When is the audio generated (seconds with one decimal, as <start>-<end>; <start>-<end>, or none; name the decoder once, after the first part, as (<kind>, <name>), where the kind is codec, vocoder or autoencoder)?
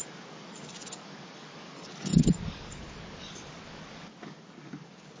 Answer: 0.0-5.2 (codec, DAC)